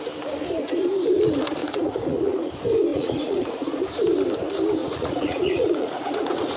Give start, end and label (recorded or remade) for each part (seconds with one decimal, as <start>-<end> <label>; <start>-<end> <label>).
0.0-1.6 recorded; 1.6-2.5 remade; 2.5-2.9 recorded; 2.9-3.8 remade; 3.8-4.8 recorded; 4.8-6.6 remade